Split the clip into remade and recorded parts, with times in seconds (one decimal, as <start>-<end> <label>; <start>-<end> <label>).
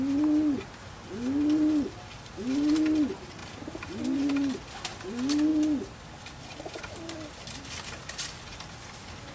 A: 0.0-9.3 recorded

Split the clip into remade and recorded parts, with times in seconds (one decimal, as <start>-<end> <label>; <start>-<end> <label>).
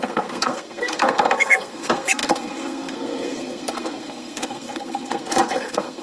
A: 0.0-6.0 remade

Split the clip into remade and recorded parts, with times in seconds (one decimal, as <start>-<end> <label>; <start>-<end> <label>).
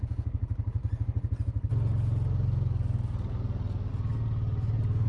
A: 0.0-5.1 recorded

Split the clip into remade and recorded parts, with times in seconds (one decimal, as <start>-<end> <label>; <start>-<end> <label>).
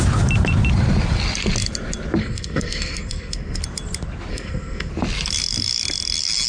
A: 0.0-2.2 recorded; 2.2-3.6 remade; 3.6-4.3 recorded; 4.3-4.9 remade; 4.9-6.5 recorded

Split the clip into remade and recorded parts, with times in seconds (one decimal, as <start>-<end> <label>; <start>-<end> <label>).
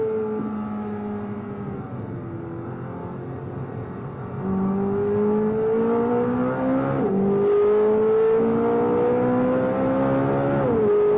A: 0.0-11.2 recorded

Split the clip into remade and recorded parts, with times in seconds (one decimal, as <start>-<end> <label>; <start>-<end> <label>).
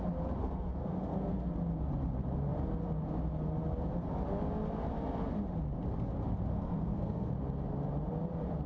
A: 0.0-0.4 recorded; 0.4-1.5 remade; 1.5-6.5 recorded; 6.5-7.3 remade; 7.3-8.7 recorded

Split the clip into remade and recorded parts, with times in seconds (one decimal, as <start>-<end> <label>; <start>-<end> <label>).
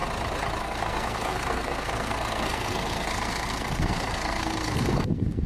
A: 0.0-0.6 recorded; 0.6-5.5 remade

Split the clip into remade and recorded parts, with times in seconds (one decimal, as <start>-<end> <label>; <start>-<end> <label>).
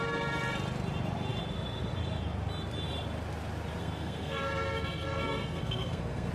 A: 0.0-3.8 recorded; 3.8-6.3 remade